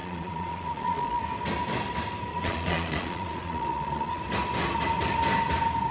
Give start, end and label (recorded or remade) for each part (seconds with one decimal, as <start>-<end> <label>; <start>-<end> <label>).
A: 0.0-1.2 remade; 1.2-2.3 recorded; 2.3-4.2 remade; 4.2-5.9 recorded